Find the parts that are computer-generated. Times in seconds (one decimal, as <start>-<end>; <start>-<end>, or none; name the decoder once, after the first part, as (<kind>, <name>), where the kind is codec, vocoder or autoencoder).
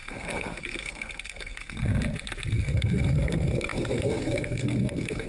0.0-1.9 (codec, SNAC); 2.5-5.3